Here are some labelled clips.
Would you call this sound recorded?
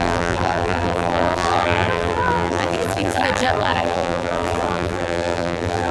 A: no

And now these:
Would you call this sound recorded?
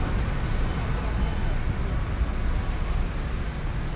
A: yes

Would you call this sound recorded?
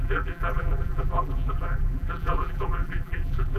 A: no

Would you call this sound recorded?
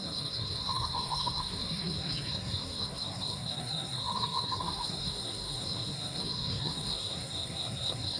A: no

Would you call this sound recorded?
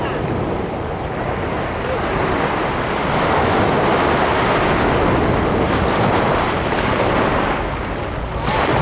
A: yes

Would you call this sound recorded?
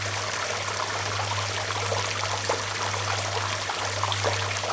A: yes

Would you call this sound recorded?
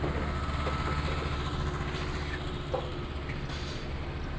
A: yes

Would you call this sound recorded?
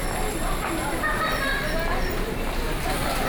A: yes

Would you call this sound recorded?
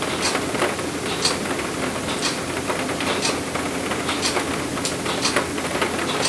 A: yes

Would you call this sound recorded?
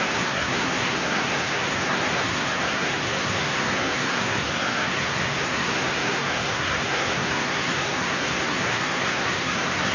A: no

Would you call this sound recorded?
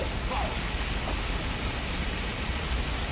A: yes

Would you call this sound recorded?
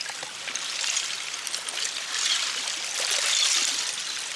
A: yes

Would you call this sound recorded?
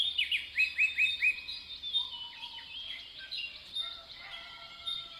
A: yes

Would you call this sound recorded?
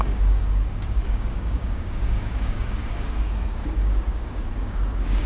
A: no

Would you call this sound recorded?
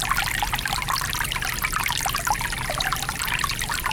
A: yes